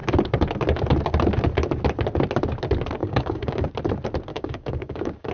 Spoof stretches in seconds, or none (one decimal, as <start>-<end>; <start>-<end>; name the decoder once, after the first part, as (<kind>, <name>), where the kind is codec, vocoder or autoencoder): 3.0-3.7 (codec, DAC); 4.3-5.3